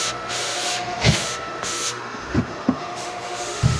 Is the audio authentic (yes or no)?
no